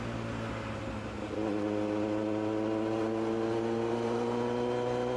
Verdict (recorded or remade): recorded